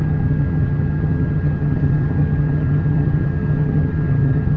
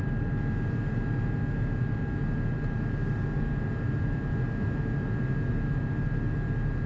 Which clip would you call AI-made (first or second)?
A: first